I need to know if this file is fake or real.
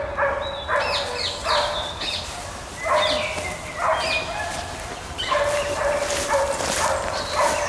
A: real